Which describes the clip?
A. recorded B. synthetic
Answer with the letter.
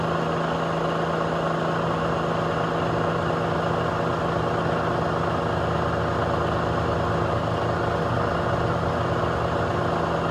A